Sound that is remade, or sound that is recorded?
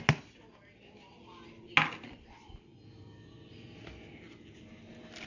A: recorded